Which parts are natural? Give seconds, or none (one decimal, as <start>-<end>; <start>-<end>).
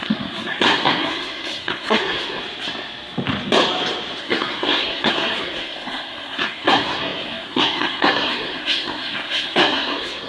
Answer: 2.4-4.2